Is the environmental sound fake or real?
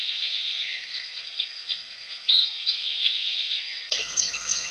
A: fake